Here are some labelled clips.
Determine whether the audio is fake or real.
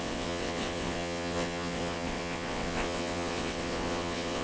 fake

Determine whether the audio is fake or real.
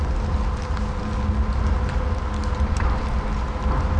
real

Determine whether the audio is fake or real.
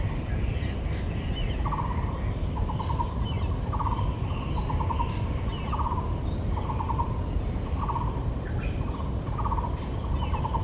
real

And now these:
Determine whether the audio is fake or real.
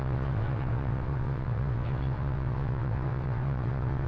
fake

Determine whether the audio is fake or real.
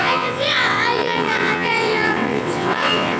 fake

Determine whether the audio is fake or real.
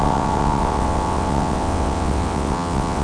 fake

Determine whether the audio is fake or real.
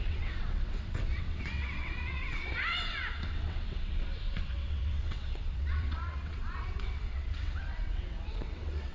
fake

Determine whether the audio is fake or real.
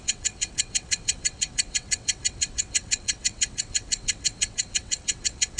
fake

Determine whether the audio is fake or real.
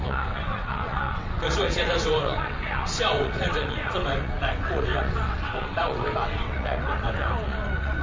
fake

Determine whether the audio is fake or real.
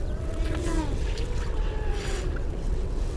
fake